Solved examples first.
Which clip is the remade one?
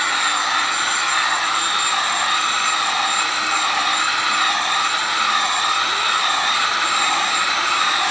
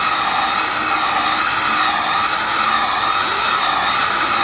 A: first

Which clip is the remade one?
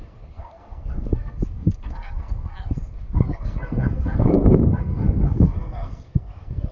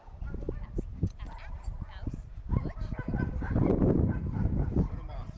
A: first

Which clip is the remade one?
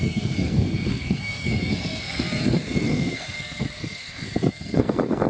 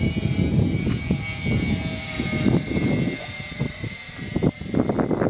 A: first